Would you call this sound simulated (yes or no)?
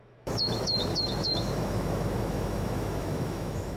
yes